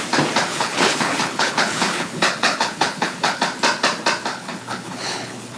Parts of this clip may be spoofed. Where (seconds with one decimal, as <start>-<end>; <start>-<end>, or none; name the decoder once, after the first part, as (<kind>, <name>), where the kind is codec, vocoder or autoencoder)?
0.5-3.4 (codec, HILCodec); 4.3-5.6